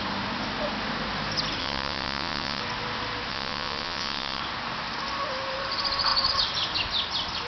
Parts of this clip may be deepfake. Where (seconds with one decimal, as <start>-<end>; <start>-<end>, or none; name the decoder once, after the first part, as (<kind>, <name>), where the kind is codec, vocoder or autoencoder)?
1.6-2.6 (vocoder, WaveNeXt); 3.3-4.4